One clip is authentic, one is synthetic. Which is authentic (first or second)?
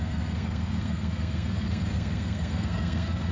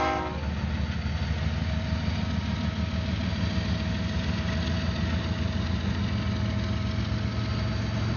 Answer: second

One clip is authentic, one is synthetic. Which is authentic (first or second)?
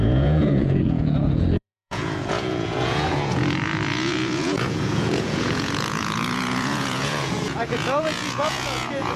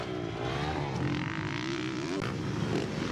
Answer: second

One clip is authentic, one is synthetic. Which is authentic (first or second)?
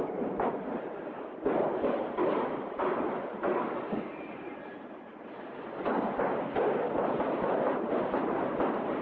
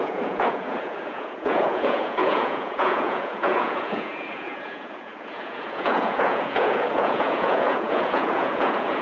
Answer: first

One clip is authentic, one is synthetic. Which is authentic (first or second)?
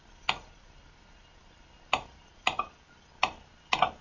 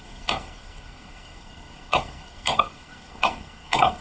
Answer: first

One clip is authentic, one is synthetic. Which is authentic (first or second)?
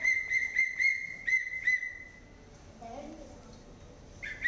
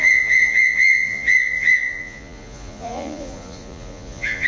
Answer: first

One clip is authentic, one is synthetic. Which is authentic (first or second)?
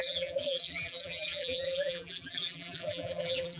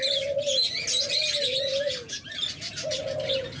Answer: second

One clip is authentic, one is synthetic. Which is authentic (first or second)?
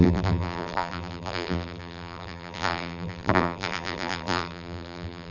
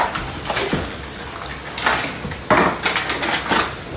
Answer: second